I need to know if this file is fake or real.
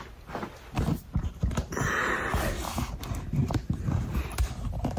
real